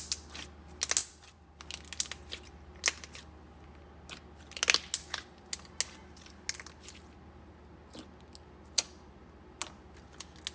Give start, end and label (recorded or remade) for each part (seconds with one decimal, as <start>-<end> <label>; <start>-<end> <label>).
0.0-1.0 recorded; 1.0-1.6 remade; 1.6-10.5 recorded